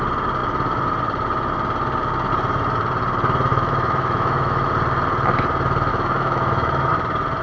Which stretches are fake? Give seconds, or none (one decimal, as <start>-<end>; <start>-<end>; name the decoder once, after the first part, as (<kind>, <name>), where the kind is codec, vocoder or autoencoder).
3.5-4.7 (autoencoder, DAC-VAE); 5.9-6.9